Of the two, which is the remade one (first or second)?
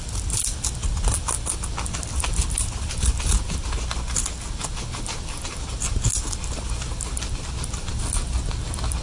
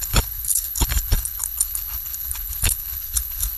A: second